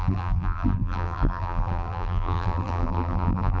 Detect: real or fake fake